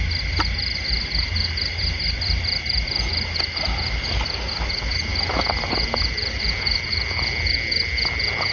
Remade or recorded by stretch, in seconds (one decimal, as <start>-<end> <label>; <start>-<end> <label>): 0.0-8.5 recorded